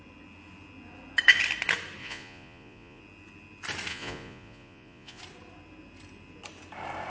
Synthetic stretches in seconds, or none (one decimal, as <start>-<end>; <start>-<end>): 2.0-3.0; 3.9-5.2